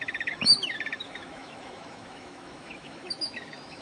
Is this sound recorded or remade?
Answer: remade